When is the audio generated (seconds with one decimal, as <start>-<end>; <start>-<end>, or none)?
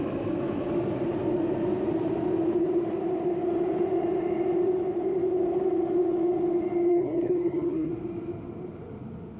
6.9-7.9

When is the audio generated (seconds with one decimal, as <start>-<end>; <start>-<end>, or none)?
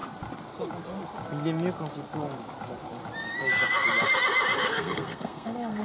4.6-5.8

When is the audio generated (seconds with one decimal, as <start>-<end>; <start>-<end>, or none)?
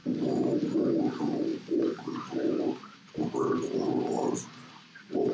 none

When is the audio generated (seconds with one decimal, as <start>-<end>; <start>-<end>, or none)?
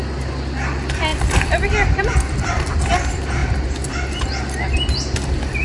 none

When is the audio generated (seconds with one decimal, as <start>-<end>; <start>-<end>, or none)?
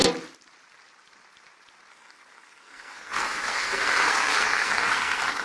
1.9-5.4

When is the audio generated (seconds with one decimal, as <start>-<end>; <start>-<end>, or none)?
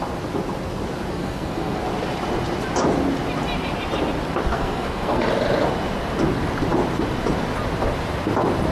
1.1-1.8; 4.5-5.3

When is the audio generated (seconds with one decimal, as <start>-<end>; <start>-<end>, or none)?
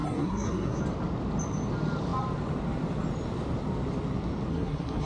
0.0-0.8; 4.5-5.1